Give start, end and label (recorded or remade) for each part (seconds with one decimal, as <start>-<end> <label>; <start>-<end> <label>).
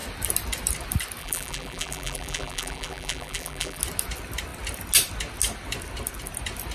0.0-1.2 recorded; 1.2-3.8 remade; 3.8-6.7 recorded